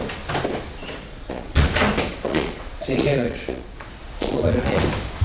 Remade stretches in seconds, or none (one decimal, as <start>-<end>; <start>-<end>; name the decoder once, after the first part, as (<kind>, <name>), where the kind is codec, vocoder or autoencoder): 0.8-1.7 (vocoder, Vocos); 2.1-4.8